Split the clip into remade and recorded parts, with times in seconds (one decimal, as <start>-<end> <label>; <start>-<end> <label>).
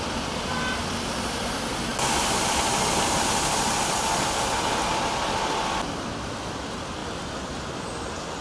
0.0-8.4 recorded